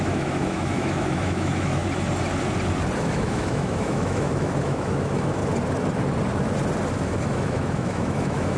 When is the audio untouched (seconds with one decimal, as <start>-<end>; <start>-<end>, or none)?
1.8-3.0; 5.4-6.9